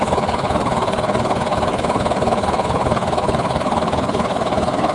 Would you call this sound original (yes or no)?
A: no